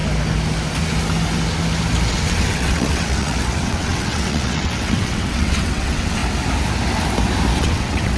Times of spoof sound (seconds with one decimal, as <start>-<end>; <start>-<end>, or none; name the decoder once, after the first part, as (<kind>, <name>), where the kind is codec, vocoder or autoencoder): 2.1-6.2 (vocoder, WaveNeXt); 7.6-8.2